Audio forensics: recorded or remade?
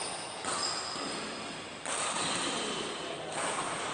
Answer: recorded